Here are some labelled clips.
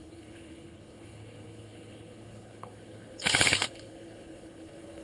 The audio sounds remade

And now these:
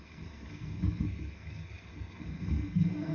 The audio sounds remade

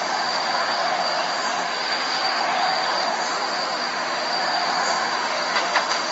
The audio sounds remade